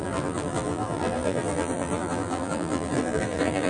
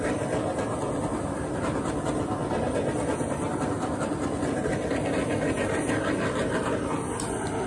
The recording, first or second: second